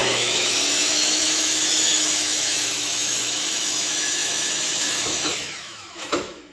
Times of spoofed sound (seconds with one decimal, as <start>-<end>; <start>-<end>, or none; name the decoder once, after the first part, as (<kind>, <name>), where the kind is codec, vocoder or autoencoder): 0.0-6.5 (autoencoder, DAC-VAE)